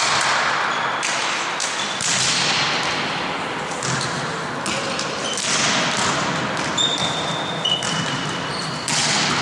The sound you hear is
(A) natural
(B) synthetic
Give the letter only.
A